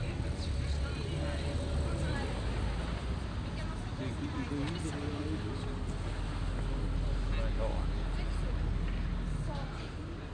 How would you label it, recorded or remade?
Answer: recorded